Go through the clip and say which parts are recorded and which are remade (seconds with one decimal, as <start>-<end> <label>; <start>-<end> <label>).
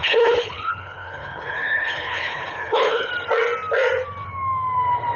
0.0-3.1 remade; 3.1-5.2 recorded